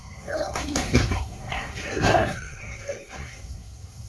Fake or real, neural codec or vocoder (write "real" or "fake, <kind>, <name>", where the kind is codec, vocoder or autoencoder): fake, codec, SNAC